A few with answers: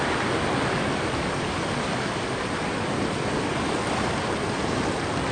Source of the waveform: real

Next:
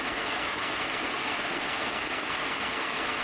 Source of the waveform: fake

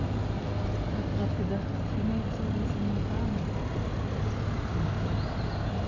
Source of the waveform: real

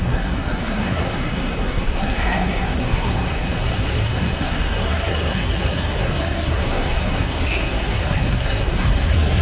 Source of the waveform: fake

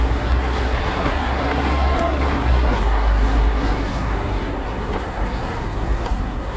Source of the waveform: fake